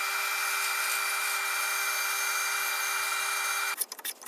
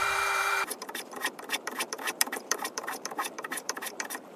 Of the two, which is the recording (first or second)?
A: first